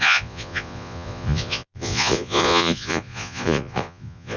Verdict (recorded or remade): remade